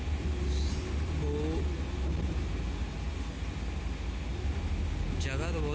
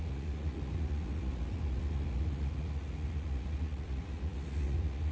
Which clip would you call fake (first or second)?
second